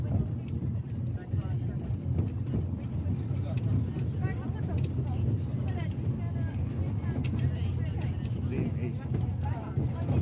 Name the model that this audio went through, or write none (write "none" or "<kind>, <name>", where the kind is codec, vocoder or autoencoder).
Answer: none